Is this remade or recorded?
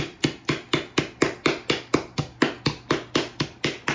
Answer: recorded